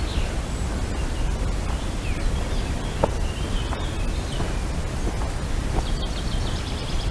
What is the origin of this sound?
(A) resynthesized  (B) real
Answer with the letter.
B